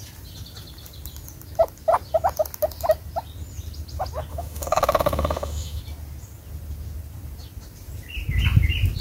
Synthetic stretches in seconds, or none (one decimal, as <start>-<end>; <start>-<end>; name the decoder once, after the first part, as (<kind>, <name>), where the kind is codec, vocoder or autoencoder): 4.3-5.8 (autoencoder, DAC-VAE)